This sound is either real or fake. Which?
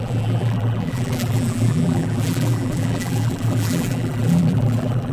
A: fake